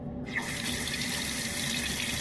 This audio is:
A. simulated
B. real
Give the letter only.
B